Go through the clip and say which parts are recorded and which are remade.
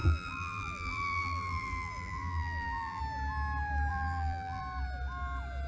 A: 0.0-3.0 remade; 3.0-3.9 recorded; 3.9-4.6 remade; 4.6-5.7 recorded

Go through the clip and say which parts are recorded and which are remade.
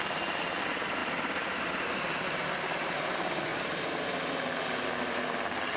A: 0.0-1.0 recorded; 1.0-2.0 remade; 2.0-3.5 recorded; 3.5-4.2 remade; 4.2-5.8 recorded